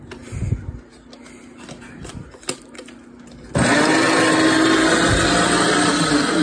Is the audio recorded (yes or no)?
yes